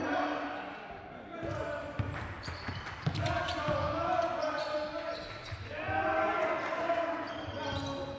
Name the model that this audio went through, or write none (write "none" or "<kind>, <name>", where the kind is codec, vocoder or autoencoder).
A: none